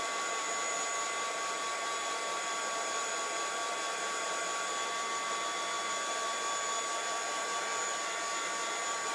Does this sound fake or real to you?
fake